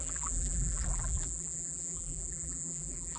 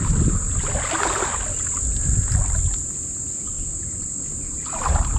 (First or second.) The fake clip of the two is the first